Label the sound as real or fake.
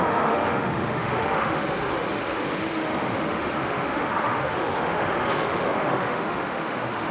fake